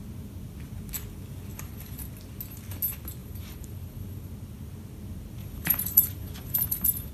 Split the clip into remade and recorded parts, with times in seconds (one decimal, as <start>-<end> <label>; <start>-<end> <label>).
0.0-1.5 recorded; 1.5-2.0 remade; 2.0-3.2 recorded; 3.2-4.3 remade; 4.3-5.4 recorded; 5.4-7.1 remade